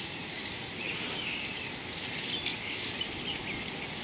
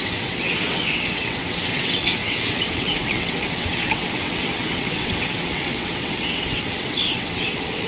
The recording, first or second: first